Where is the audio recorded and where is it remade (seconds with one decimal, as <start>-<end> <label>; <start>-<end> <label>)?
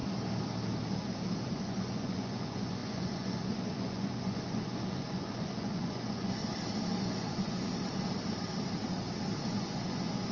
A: 0.0-1.5 recorded; 1.5-6.4 remade; 6.4-7.0 recorded; 7.0-7.7 remade; 7.7-9.5 recorded; 9.5-10.3 remade